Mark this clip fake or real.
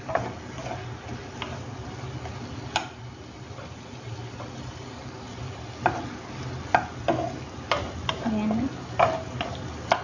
real